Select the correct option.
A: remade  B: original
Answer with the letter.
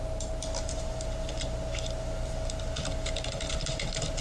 B